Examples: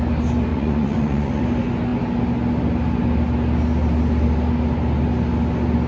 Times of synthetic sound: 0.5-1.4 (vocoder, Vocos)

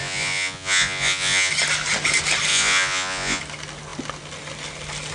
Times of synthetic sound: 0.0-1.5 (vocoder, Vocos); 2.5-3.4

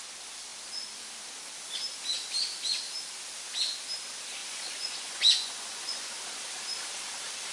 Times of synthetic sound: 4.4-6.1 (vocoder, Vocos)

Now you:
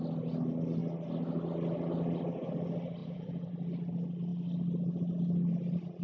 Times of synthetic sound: 3.0-3.5 (vocoder, Vocos)

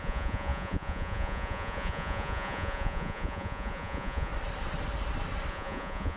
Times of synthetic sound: 0.0-4.3 (vocoder, Vocos); 5.5-6.2

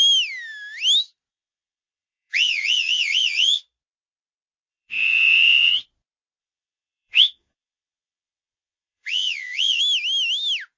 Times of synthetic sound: 1.3-3.6 (vocoder, Vocos); 4.7-5.7; 6.4-9.8

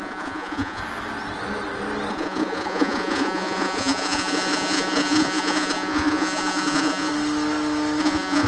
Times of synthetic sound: 0.0-0.8 (vocoder, Vocos); 2.1-7.1; 8.0-8.5